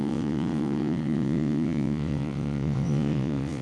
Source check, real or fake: fake